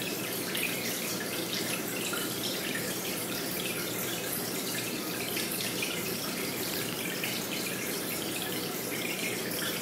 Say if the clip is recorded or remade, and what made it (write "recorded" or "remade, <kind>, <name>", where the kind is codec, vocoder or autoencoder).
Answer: remade, vocoder, BigVGAN v2